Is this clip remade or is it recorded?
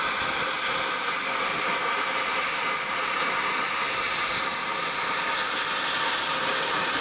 recorded